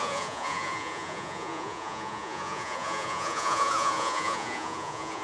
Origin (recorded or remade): remade